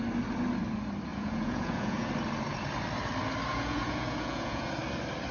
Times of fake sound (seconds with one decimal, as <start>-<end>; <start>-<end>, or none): 1.1-2.1; 3.5-4.7